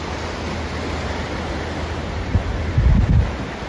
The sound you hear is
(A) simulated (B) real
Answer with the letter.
B